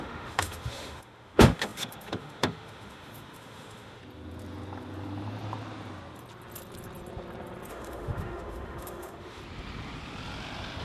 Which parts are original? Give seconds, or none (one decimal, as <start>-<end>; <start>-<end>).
4.0-7.7; 9.4-10.8